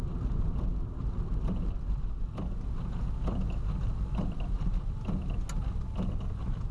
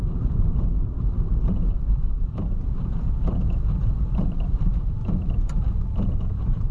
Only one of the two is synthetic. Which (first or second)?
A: second